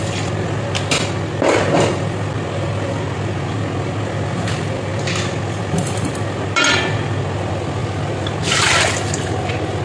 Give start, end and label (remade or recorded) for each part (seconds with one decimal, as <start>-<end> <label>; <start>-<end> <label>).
0.0-9.8 recorded